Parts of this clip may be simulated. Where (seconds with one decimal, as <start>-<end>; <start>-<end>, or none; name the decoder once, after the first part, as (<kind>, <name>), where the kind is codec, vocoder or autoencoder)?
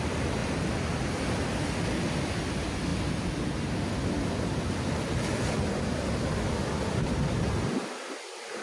none